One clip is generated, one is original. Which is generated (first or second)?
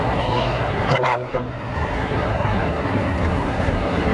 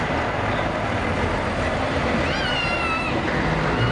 first